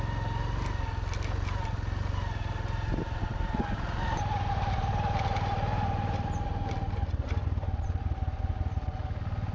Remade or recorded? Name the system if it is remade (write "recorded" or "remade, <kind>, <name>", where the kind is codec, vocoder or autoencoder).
recorded